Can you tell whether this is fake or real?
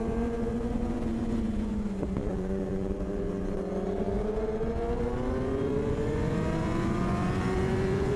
fake